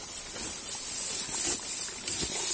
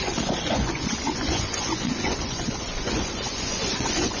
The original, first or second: first